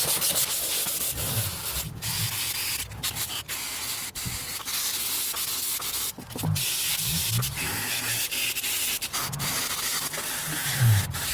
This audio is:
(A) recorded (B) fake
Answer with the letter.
A